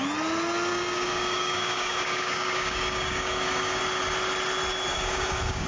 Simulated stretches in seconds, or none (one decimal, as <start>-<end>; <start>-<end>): 0.7-3.8; 4.9-5.7